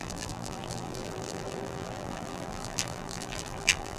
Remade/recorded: remade